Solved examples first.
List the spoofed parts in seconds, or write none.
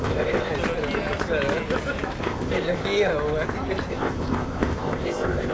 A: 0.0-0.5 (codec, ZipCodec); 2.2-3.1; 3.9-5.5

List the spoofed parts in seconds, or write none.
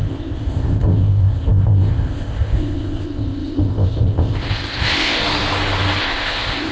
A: 0.0-5.2 (codec, ZipCodec); 6.0-6.7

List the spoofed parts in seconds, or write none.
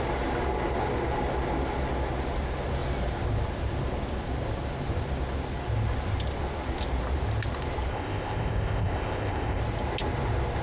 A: 7.9-9.6 (codec, ZipCodec)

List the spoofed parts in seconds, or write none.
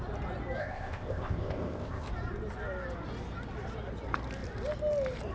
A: 0.6-2.1 (codec, ZipCodec)